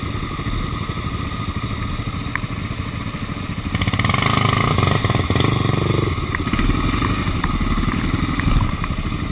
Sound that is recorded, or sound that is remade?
recorded